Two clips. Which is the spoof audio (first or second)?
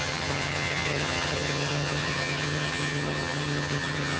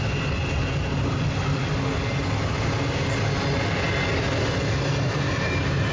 first